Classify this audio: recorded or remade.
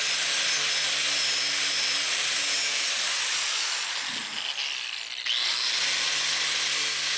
recorded